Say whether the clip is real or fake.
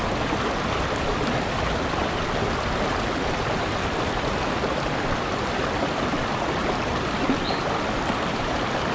fake